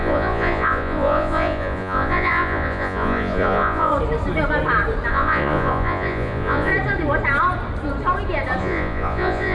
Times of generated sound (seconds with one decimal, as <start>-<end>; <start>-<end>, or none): 0.0-3.9; 5.1-6.7; 8.6-9.5